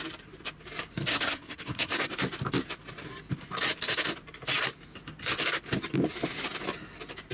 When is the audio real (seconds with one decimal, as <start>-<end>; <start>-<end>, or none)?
0.0-1.1; 2.1-7.3